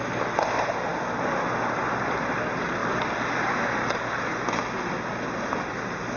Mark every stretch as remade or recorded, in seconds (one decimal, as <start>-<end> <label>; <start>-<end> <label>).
0.0-6.2 recorded